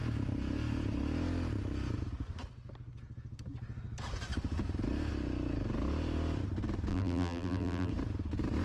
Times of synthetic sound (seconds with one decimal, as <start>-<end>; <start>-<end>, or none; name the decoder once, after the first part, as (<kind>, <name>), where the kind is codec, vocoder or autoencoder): 6.9-7.9 (vocoder, BigVGAN v2)